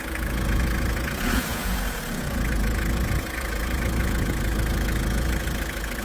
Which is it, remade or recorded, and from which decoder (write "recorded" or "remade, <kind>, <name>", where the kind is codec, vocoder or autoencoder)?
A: remade, vocoder, Vocos